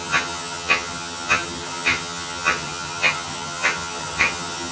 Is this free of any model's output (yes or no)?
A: no